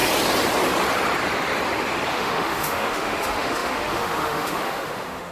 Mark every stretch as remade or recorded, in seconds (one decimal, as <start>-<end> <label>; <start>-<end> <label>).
0.0-2.1 recorded; 2.1-5.3 remade